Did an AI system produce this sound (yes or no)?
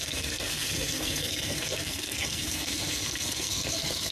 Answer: yes